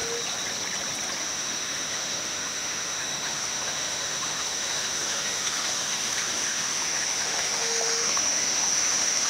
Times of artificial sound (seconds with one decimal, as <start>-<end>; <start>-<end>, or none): 1.2-9.3